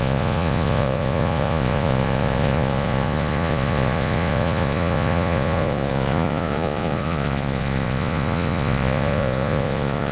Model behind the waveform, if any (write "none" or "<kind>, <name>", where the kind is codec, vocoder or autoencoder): vocoder, Vocos